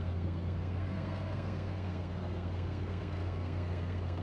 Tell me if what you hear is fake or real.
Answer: fake